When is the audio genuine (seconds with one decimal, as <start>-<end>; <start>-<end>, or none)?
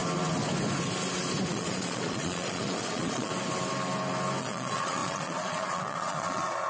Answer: 0.0-1.5; 3.3-4.4